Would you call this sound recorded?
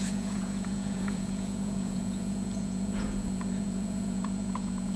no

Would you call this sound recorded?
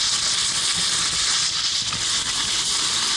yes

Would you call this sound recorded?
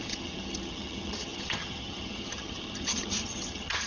no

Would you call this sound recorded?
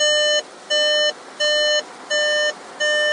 yes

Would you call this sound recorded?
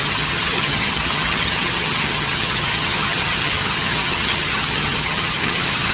no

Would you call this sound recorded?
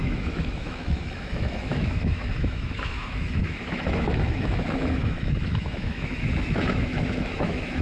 no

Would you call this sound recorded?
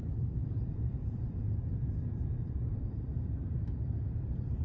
no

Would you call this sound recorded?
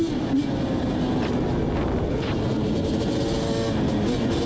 yes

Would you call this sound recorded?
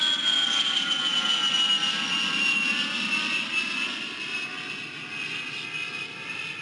yes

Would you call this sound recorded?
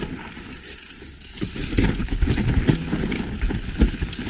yes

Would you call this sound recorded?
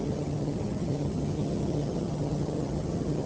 no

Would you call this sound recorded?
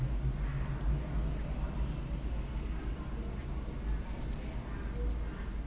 yes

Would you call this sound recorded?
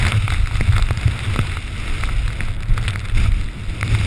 yes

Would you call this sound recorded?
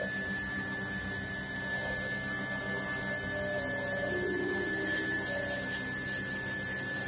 yes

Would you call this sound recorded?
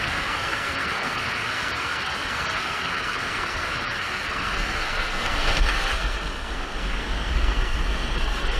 no